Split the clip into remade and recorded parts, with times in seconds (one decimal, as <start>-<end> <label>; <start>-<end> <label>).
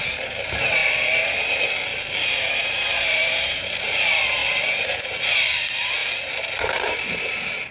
0.0-0.8 remade; 0.8-2.5 recorded; 2.5-4.4 remade; 4.4-5.6 recorded; 5.6-6.0 remade; 6.0-6.6 recorded; 6.6-7.7 remade